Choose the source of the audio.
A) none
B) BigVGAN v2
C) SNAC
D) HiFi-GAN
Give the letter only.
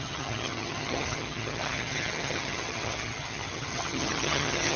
D